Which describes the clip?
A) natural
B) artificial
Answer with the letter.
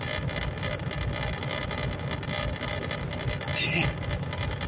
A